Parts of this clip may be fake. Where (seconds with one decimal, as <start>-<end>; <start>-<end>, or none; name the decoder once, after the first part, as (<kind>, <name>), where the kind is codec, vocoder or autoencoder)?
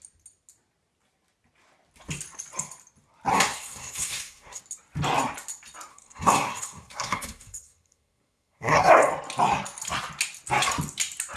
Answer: 3.3-4.6 (codec, SNAC); 5.9-9.0